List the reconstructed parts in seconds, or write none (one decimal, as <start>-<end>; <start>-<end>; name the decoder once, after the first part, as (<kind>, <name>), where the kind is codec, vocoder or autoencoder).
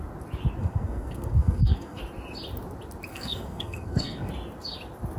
0.6-2.0 (codec, SNAC); 3.1-4.3